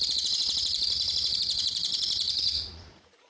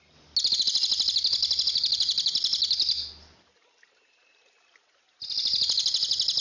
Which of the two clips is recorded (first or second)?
second